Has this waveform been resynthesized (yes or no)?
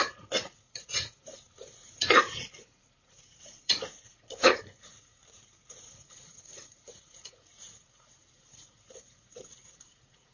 yes